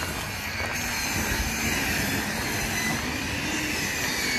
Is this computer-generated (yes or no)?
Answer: no